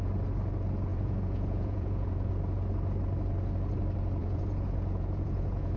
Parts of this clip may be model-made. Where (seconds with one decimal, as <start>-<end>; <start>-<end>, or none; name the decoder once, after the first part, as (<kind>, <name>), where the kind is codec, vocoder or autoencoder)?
0.9-2.3 (vocoder, Vocos); 4.2-5.8